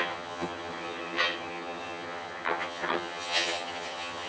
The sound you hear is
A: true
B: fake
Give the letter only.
B